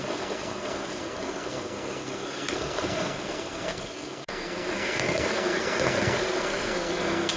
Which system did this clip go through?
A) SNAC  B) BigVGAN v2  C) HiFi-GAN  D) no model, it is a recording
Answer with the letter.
A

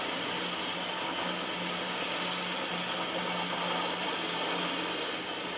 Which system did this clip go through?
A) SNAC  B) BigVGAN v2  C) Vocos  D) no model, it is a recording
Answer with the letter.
D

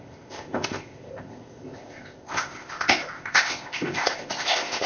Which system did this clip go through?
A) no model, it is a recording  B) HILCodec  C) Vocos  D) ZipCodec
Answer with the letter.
D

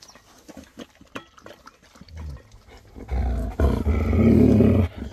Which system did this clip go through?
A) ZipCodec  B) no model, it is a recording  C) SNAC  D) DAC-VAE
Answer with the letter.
B